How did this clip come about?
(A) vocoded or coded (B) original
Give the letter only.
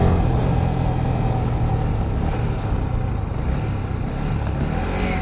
B